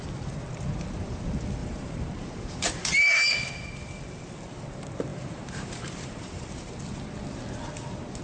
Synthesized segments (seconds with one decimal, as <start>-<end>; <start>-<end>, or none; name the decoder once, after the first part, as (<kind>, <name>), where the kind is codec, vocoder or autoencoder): 1.6-2.9 (vocoder, BigVGAN v2); 5.1-6.7

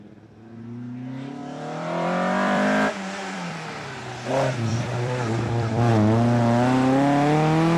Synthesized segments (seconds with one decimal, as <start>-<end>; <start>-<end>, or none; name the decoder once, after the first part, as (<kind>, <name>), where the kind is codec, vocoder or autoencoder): 1.4-3.9 (vocoder, BigVGAN v2); 4.7-5.9

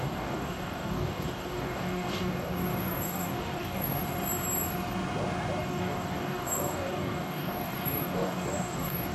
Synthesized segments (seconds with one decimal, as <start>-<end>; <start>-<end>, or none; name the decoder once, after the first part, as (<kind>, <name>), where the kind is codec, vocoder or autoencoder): 0.0-4.0 (codec, DAC); 5.6-9.1

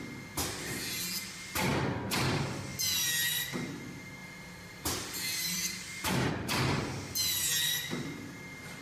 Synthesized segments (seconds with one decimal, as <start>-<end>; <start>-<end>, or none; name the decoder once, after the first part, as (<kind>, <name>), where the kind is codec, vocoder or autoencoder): 4.2-6.3 (vocoder, BigVGAN v2)